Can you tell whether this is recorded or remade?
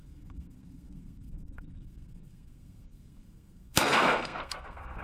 remade